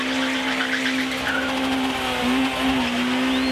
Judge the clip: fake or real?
real